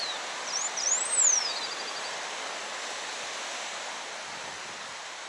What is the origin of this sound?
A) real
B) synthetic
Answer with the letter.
A